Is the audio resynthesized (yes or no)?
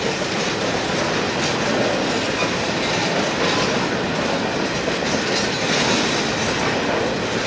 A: no